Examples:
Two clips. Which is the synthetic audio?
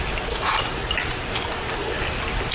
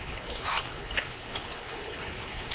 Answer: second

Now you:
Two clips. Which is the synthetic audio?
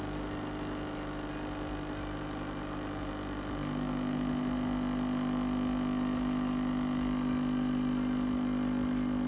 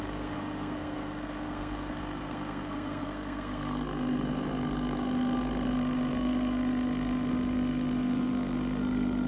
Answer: second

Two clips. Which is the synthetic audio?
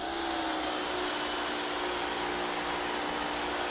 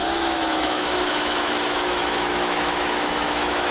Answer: second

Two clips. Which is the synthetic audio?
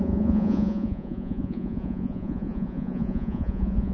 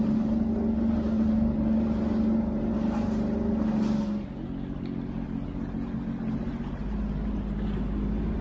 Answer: first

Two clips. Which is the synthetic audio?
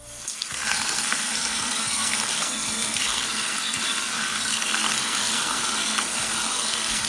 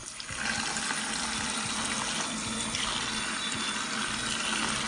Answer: first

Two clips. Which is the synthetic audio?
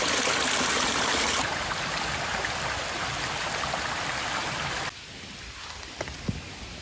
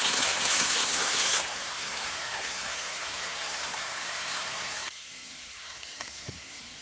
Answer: second